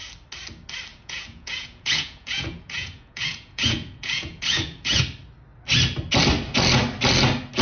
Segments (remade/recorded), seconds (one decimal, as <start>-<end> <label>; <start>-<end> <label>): 0.0-0.9 recorded; 0.9-5.0 remade; 5.0-7.6 recorded